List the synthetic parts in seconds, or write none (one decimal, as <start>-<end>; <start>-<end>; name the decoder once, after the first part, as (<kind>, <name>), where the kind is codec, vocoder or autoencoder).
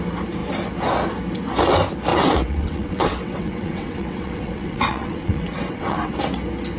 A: 2.1-6.2 (vocoder, WaveNeXt)